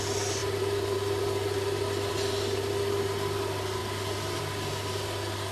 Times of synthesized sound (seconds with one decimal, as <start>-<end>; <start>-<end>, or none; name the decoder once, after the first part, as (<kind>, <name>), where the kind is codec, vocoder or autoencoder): none